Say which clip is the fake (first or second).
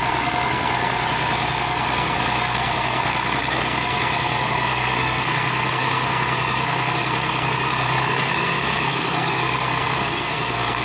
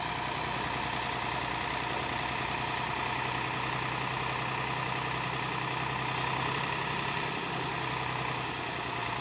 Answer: first